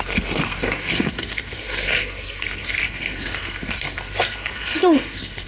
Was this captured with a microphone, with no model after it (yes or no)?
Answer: no